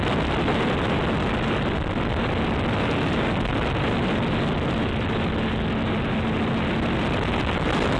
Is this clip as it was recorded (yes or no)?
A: yes